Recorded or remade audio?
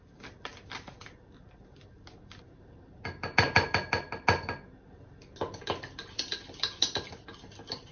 recorded